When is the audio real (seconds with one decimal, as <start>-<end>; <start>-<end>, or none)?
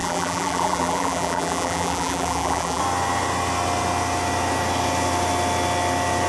2.8-6.3